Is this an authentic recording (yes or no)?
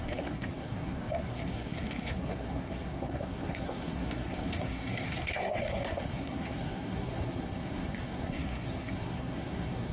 no